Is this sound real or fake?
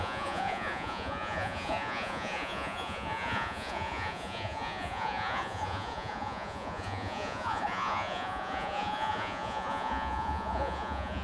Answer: fake